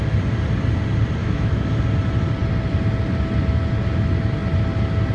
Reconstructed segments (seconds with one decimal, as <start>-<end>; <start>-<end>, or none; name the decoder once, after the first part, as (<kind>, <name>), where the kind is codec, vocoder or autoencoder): 1.2-1.8 (autoencoder, DAC-VAE)